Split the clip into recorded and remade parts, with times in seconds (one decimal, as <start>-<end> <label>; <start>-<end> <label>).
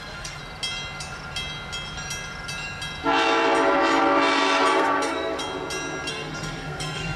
0.0-0.4 remade; 0.4-4.7 recorded; 4.7-5.4 remade; 5.4-6.1 recorded; 6.1-7.2 remade